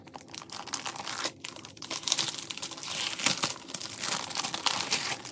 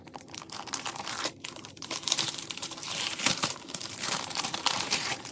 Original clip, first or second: first